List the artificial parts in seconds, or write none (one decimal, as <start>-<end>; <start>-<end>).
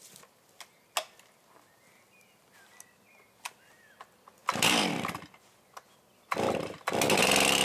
none